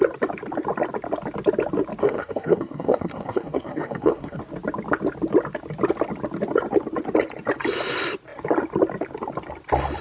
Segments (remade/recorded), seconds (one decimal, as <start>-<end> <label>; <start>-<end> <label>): 0.0-2.0 recorded; 2.0-4.4 remade; 4.4-10.0 recorded